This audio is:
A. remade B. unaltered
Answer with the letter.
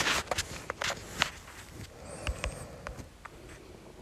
B